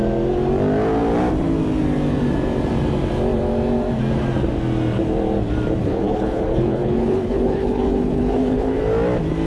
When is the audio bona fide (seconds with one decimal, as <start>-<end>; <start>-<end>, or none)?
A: 0.0-5.8; 8.8-9.5